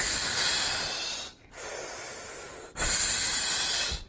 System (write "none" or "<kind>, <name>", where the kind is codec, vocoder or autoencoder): none